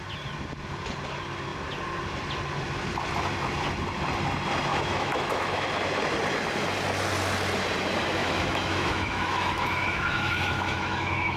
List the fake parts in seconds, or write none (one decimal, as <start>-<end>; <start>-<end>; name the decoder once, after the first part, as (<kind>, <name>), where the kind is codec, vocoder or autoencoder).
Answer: 4.7-5.7 (autoencoder, DAC-VAE); 8.2-11.4